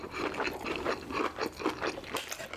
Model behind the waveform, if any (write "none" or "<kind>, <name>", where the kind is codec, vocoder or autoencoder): none